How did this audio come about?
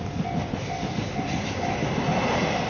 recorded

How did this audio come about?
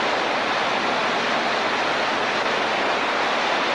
recorded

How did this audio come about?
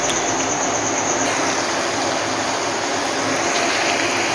recorded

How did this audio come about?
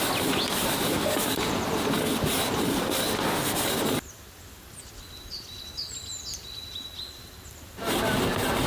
recorded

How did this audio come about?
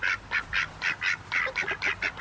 recorded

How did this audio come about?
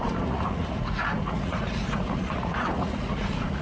remade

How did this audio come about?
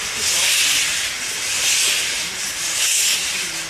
recorded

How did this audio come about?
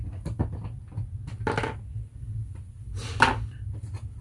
recorded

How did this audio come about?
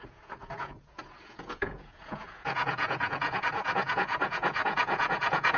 remade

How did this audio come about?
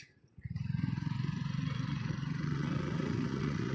remade